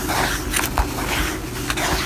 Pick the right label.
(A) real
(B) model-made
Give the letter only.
A